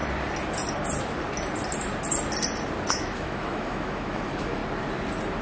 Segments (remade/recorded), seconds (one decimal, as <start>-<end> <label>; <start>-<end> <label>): 0.0-2.9 recorded; 2.9-4.6 remade; 4.6-5.4 recorded

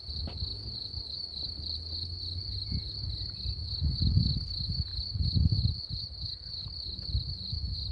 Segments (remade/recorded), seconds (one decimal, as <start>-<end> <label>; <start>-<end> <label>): 0.0-7.9 recorded